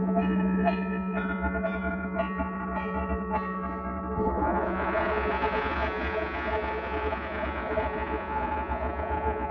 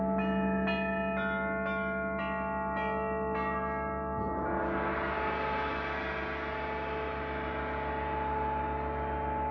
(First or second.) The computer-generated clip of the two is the first